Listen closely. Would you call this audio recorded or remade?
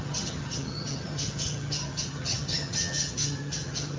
remade